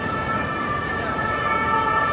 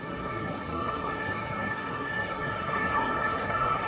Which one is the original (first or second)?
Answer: first